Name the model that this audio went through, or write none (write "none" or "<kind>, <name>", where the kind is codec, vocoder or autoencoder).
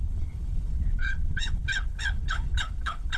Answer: codec, HILCodec